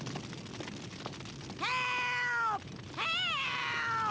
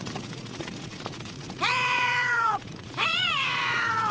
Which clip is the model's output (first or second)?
second